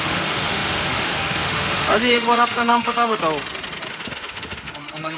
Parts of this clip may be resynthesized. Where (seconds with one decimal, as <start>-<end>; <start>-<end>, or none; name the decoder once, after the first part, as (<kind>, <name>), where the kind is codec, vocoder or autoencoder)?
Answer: 0.0-3.2 (autoencoder, DAC-VAE); 3.9-5.2